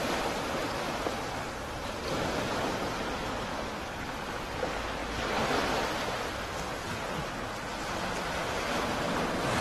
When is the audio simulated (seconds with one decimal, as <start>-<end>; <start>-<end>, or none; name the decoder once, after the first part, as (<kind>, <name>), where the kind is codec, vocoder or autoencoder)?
0.6-3.2 (vocoder, BigVGAN v2)